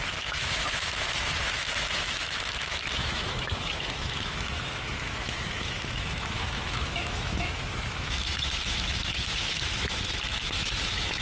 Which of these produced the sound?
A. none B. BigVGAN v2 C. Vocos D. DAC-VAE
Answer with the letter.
D